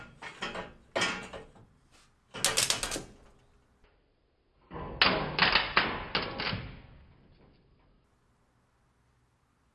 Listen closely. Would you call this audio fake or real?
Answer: real